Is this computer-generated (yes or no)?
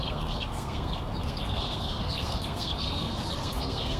yes